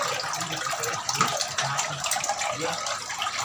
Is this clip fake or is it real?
real